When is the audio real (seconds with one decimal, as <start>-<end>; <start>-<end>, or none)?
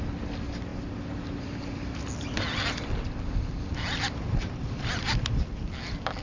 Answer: 0.0-6.2